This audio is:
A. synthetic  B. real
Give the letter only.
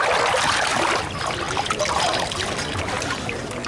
B